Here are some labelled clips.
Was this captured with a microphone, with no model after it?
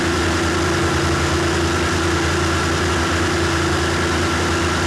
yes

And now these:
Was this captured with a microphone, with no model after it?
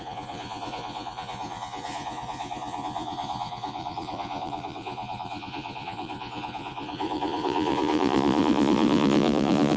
no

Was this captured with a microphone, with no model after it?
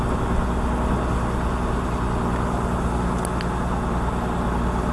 yes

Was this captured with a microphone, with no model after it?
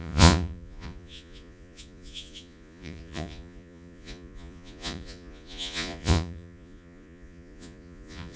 no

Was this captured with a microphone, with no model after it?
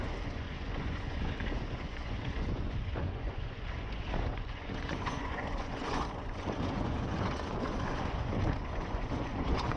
no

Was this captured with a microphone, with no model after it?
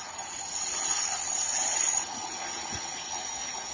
no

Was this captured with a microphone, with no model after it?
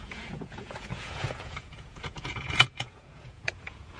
no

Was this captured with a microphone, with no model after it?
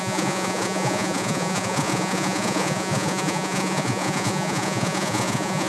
no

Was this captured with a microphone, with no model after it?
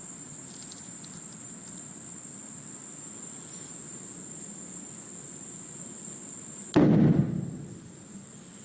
yes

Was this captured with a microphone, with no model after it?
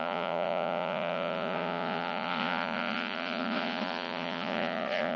no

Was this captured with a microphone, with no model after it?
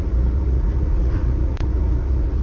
no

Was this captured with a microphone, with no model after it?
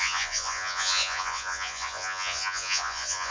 no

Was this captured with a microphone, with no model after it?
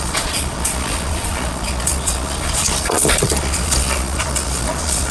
no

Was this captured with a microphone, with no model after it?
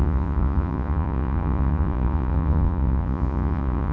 no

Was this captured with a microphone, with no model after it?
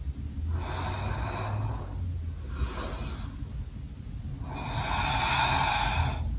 yes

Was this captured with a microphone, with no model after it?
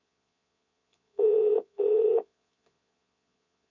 no